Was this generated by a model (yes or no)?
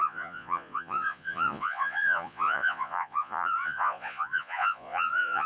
yes